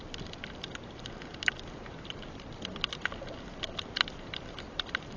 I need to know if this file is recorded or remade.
remade